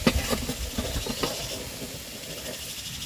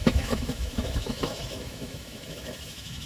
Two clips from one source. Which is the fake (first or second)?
second